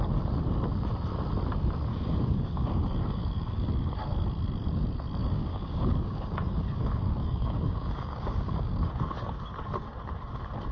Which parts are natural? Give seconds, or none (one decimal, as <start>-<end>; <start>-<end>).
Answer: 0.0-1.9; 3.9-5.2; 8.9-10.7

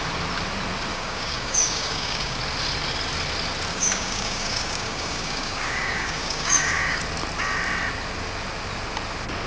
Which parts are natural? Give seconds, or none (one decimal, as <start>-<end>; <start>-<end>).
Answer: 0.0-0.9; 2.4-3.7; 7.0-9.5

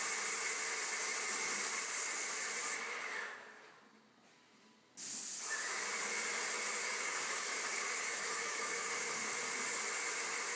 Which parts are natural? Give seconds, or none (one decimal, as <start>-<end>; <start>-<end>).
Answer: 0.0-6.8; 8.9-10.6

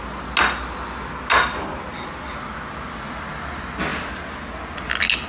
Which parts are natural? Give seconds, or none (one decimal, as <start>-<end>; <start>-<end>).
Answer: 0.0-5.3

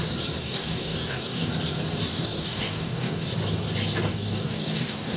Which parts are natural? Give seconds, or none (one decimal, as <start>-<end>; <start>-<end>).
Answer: 0.0-0.4; 1.5-2.1; 3.3-4.1

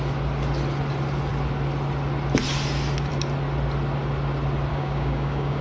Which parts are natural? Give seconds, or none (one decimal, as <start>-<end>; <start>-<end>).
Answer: 0.0-4.7

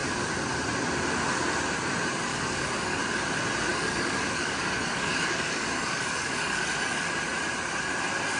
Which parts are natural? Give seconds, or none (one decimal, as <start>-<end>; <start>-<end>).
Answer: 0.0-2.3; 3.0-3.7; 7.1-8.4